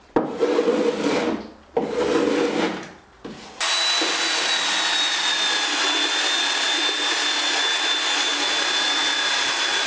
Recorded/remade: recorded